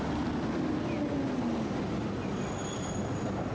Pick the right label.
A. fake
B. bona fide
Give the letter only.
B